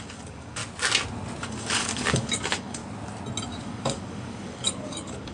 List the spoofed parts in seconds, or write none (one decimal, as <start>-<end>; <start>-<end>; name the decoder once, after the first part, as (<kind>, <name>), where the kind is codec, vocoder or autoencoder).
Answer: 0.0-0.6 (codec, DAC); 1.4-2.8; 3.5-5.3